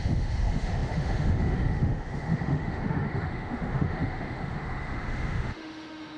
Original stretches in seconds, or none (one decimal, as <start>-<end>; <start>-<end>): none